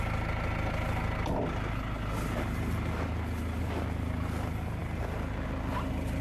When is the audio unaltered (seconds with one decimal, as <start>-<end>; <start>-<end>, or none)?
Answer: 0.0-6.2